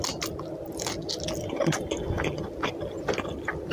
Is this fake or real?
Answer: real